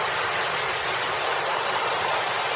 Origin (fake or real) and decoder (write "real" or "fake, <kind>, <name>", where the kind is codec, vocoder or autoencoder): real